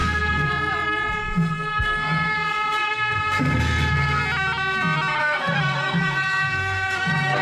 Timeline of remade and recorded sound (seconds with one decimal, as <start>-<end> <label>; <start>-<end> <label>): 0.0-0.5 remade; 0.5-1.2 recorded; 1.2-4.2 remade; 4.2-5.2 recorded; 5.2-7.4 remade